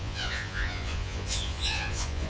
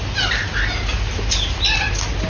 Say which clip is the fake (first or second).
first